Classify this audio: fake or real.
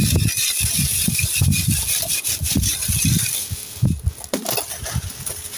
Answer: real